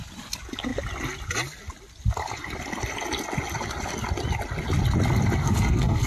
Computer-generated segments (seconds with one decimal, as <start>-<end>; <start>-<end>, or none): 5.4-6.1